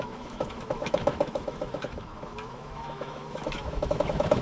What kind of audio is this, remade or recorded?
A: remade